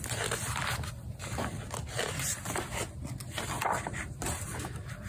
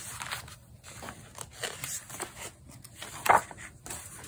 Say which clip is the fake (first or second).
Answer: first